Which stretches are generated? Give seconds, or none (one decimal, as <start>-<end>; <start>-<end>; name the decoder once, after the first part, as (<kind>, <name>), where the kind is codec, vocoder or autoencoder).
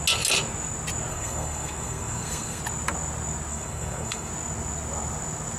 1.1-2.6 (codec, SNAC); 3.5-4.3